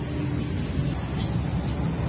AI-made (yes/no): no